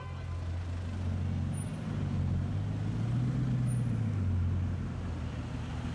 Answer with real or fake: real